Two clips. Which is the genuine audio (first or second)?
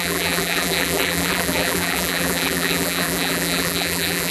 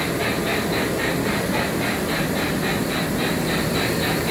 second